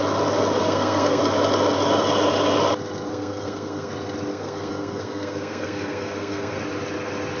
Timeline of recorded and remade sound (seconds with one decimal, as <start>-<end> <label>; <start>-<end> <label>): 0.0-0.6 recorded; 0.6-1.2 remade; 1.2-3.1 recorded; 3.1-3.9 remade; 3.9-4.3 recorded; 4.3-6.6 remade; 6.6-7.4 recorded